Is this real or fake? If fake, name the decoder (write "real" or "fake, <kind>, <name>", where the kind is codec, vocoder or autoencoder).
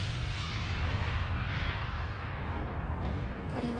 fake, codec, DAC